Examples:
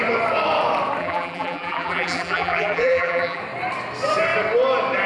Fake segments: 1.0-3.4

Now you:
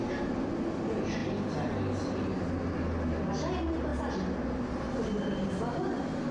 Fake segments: none

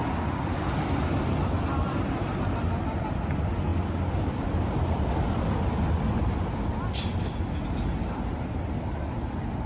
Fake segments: none